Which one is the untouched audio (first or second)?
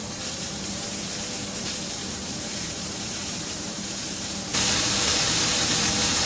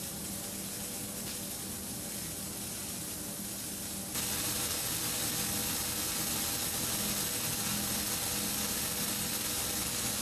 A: second